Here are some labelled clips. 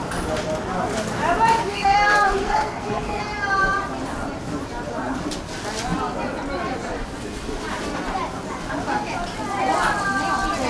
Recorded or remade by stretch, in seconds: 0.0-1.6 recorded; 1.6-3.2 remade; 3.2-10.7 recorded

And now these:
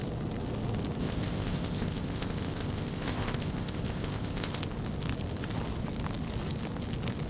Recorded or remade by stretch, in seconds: 0.0-1.0 recorded; 1.0-4.6 remade; 4.6-7.3 recorded

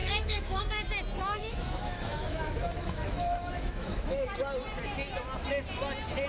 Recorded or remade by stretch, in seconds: 0.0-0.6 remade; 0.6-1.4 recorded; 1.4-4.3 remade; 4.3-6.3 recorded

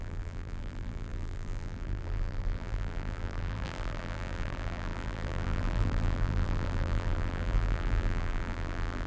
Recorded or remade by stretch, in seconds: 0.0-9.1 remade